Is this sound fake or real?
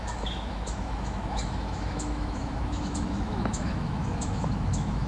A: fake